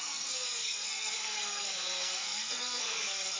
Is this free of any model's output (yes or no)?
no